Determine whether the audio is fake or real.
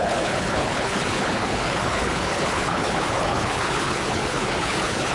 fake